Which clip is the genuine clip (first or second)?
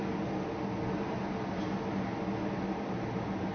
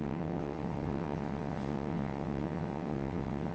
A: first